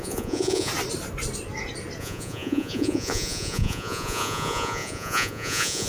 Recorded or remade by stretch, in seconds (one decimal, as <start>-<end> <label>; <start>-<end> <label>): 0.0-0.7 remade; 0.7-2.0 recorded; 2.0-5.9 remade